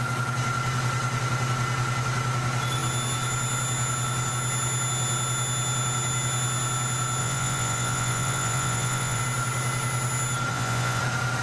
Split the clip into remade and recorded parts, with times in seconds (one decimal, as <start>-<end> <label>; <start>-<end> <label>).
0.0-7.2 recorded; 7.2-9.2 remade; 9.2-10.5 recorded; 10.5-11.0 remade; 11.0-11.4 recorded